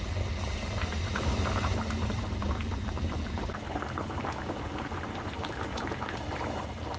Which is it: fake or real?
fake